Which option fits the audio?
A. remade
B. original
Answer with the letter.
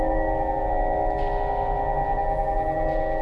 B